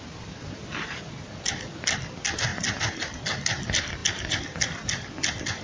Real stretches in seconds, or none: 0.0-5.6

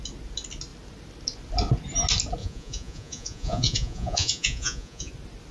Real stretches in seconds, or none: 0.0-2.4; 5.1-5.5

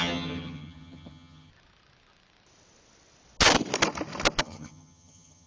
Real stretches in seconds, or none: 1.5-4.4

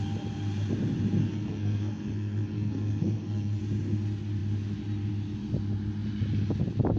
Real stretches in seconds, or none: 0.0-1.2; 3.6-7.0

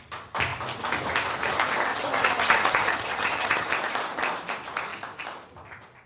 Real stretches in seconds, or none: 0.0-1.9; 3.7-6.1

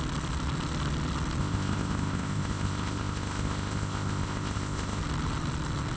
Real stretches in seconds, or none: 0.0-1.4; 5.0-6.0

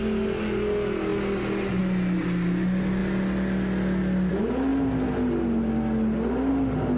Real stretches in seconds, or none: 0.0-7.0

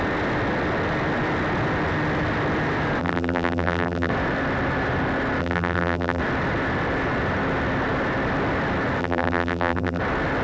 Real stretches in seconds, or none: 0.0-3.0; 4.1-5.4; 6.2-9.0; 10.0-10.4